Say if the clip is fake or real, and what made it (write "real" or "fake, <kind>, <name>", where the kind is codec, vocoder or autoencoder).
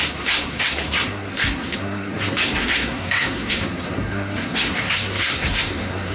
fake, codec, SNAC